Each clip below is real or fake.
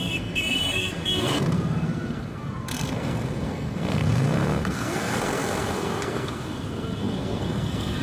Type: fake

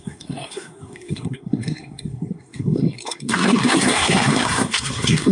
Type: fake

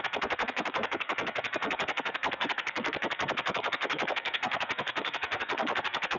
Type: fake